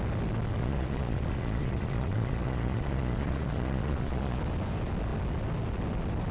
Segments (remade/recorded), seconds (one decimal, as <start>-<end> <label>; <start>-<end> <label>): 0.0-0.6 recorded; 0.6-4.4 remade; 4.4-6.3 recorded

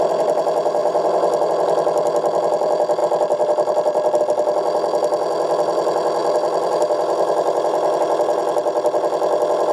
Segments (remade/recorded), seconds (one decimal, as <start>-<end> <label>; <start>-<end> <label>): 0.0-0.8 recorded; 0.8-1.5 remade; 1.5-3.0 recorded; 3.0-4.2 remade; 4.2-6.2 recorded; 6.2-8.0 remade; 8.0-9.7 recorded

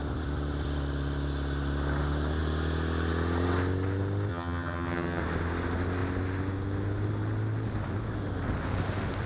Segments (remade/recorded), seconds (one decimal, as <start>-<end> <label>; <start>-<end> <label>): 0.0-4.3 recorded; 4.3-5.2 remade; 5.2-9.3 recorded

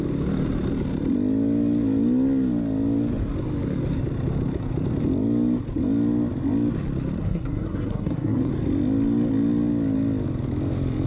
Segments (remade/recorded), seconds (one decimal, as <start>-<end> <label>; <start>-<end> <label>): 0.0-7.2 recorded; 7.2-8.5 remade; 8.5-11.1 recorded

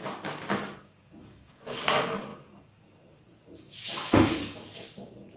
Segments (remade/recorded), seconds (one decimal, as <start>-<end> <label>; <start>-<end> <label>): 0.0-5.4 remade

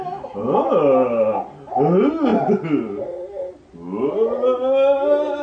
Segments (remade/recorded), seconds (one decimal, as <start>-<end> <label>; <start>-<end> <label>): 0.0-5.4 recorded